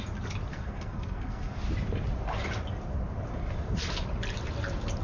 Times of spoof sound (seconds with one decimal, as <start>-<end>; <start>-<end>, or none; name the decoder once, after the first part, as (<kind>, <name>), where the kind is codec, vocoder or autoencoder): 0.5-1.6 (codec, SNAC)